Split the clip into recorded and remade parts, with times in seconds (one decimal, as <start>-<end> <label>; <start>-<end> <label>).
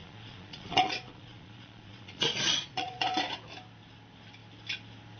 0.0-3.1 remade; 3.1-5.2 recorded